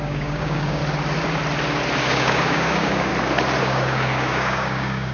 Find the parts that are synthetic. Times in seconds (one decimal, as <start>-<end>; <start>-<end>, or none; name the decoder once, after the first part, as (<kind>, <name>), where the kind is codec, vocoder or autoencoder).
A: 0.0-0.8 (codec, DAC); 2.0-3.1; 3.6-5.1